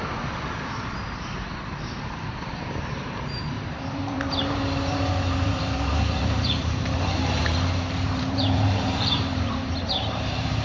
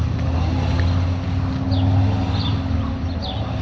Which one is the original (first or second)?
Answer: second